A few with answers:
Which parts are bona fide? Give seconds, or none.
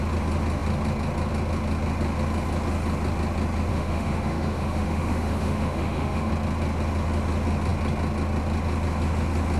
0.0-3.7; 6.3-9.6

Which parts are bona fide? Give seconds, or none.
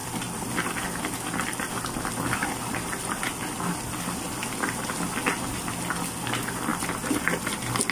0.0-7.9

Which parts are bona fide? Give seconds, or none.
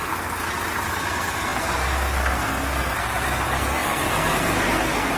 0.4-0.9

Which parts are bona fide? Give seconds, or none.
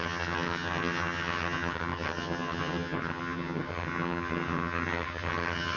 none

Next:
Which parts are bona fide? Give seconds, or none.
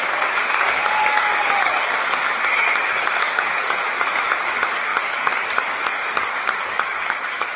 none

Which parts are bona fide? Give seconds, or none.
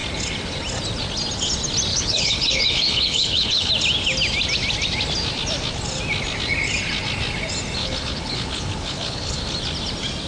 0.0-1.9; 3.7-7.8; 9.4-10.3